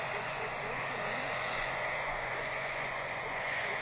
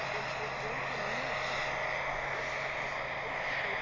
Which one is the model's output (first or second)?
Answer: first